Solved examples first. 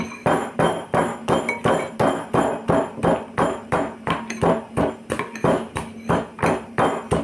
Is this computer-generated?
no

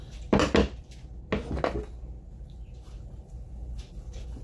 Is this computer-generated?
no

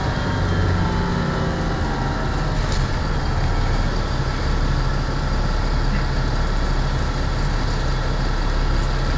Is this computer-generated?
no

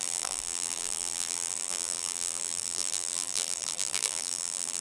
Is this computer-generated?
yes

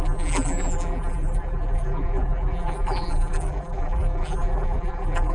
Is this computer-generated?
yes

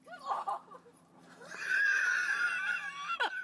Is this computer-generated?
yes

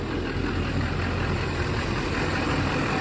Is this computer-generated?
no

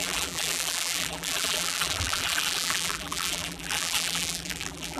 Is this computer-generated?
yes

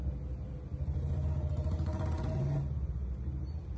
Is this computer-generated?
no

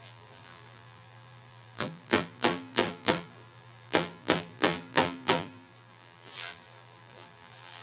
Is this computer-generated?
yes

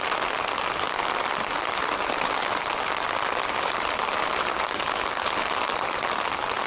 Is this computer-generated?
no